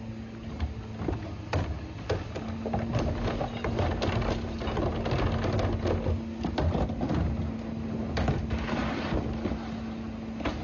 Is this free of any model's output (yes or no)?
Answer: yes